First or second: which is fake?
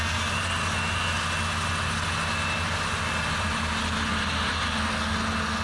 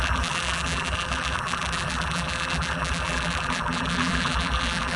second